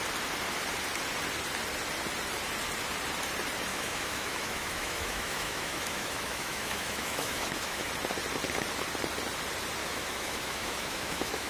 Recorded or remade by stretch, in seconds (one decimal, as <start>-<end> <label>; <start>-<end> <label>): 0.0-3.7 recorded; 3.7-7.9 remade; 7.9-9.8 recorded; 9.8-11.5 remade